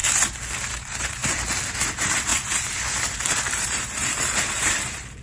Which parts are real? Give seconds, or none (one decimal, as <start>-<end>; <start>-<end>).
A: 0.0-0.7; 1.2-1.8